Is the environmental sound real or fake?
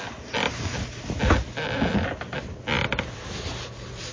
real